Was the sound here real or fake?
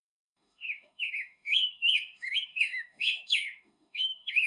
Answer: fake